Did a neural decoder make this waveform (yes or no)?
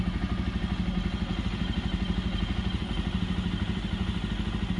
no